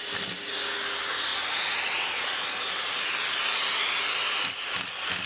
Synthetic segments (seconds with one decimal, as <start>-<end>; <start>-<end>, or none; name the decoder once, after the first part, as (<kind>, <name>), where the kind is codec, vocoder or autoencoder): none